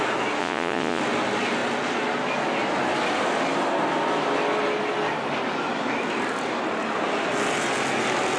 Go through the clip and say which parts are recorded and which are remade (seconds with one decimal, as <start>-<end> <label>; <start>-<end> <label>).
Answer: 0.0-0.4 recorded; 0.4-1.0 remade; 1.0-8.4 recorded